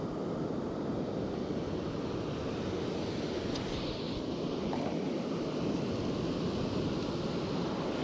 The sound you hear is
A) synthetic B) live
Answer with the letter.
B